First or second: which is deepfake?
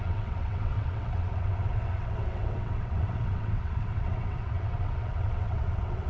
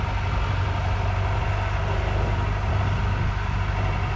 first